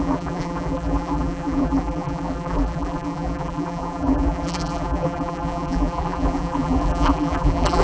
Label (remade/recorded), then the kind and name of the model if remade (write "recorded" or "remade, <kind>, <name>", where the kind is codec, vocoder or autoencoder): remade, vocoder, BigVGAN v2